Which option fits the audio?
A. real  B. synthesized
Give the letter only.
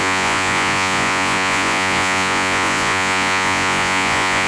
B